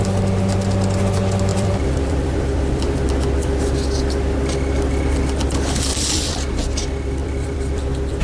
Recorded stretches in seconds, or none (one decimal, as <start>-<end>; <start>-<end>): 0.0-1.5; 3.1-5.9; 6.6-7.2